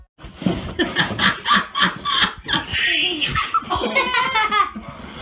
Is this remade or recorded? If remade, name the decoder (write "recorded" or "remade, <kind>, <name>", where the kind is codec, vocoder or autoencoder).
recorded